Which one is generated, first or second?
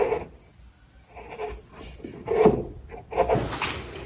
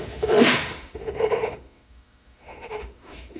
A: second